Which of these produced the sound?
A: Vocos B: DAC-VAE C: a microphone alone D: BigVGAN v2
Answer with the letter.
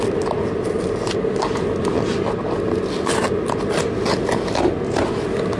C